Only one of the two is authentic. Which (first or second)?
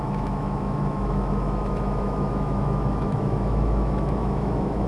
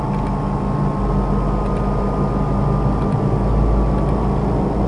second